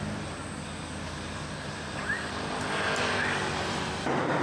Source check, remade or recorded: recorded